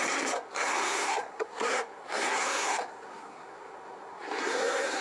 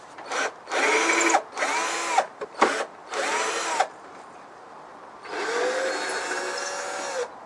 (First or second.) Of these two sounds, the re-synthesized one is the first